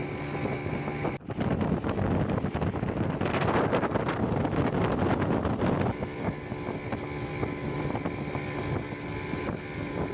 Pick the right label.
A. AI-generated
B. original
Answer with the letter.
B